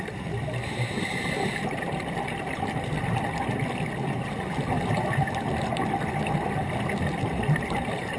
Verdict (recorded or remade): recorded